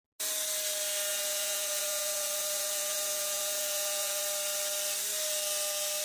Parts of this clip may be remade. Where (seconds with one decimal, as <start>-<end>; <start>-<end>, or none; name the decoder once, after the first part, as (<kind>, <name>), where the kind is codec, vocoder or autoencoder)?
1.1-4.2 (vocoder, Vocos)

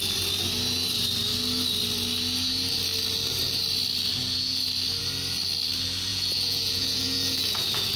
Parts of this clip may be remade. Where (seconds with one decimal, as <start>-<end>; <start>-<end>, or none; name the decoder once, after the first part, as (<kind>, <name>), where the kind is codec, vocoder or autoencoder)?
6.1-8.0 (vocoder, Vocos)

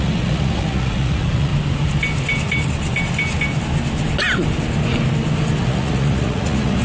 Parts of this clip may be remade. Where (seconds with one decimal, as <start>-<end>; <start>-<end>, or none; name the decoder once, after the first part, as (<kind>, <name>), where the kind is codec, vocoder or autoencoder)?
0.0-1.5 (vocoder, Vocos); 5.6-6.8